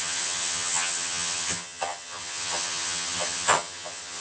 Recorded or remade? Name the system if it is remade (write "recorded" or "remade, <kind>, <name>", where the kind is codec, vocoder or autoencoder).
remade, vocoder, HiFi-GAN